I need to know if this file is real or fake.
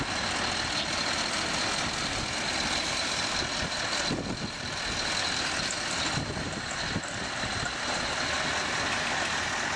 real